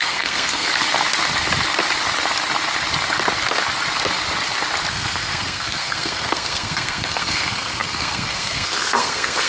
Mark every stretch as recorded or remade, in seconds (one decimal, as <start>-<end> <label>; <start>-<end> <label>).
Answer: 0.0-0.7 remade; 0.7-4.9 recorded; 4.9-9.5 remade